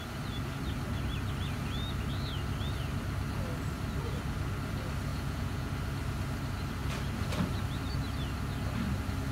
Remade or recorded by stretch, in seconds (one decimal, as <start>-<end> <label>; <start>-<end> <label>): 0.0-5.1 recorded; 5.1-5.7 remade; 5.7-9.3 recorded

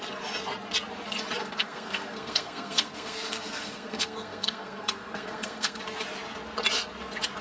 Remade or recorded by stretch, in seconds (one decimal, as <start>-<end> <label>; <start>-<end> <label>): 0.0-1.4 recorded; 1.4-5.8 remade; 5.8-7.4 recorded

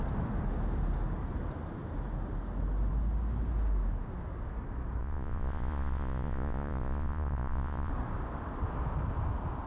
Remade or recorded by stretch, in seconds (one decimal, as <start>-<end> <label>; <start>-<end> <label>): 0.0-5.0 recorded; 5.0-7.9 remade; 7.9-9.7 recorded

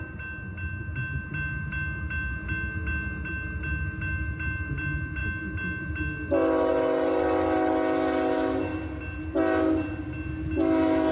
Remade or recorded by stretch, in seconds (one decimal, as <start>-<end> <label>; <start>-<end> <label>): 0.0-11.1 recorded